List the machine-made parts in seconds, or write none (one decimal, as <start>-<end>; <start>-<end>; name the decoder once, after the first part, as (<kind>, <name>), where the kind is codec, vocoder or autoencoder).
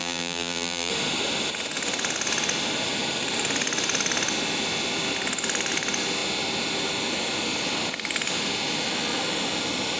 0.0-0.9 (vocoder, BigVGAN v2)